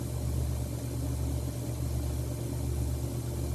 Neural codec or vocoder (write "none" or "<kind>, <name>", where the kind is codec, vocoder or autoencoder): none